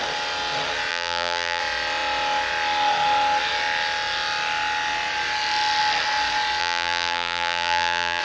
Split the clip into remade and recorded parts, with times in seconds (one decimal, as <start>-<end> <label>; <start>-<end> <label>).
0.0-0.9 recorded; 0.9-1.6 remade; 1.6-6.6 recorded; 6.6-8.2 remade